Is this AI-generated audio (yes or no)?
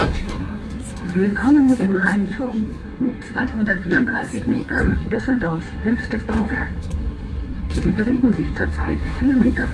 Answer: yes